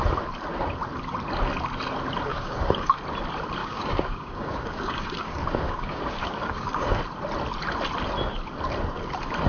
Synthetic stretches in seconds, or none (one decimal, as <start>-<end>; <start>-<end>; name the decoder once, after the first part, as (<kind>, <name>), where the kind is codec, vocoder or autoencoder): 2.3-3.0 (codec, DAC); 3.6-7.0